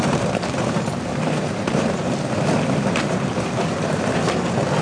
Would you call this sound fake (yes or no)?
yes